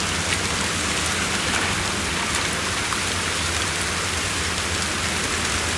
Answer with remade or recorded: recorded